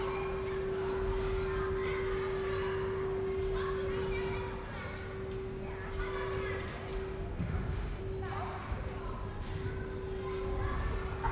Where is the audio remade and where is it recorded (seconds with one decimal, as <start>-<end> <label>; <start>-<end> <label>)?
0.0-7.4 recorded; 7.4-8.0 remade; 8.0-11.3 recorded